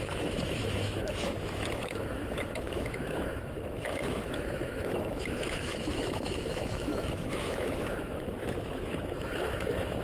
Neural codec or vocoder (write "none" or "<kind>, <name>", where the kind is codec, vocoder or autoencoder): autoencoder, DAC-VAE